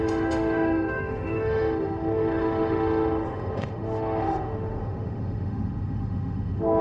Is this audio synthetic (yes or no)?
yes